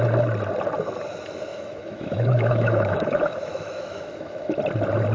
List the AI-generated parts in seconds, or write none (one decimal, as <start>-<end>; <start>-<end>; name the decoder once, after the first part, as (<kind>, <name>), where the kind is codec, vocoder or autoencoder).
1.5-4.6 (autoencoder, DAC-VAE)